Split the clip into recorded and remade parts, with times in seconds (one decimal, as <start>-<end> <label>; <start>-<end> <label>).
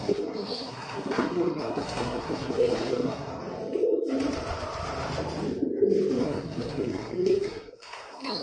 0.0-3.3 remade; 3.3-6.2 recorded; 6.2-8.4 remade